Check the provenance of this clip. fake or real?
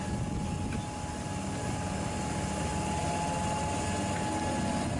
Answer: real